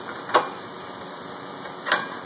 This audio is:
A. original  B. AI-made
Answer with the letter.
A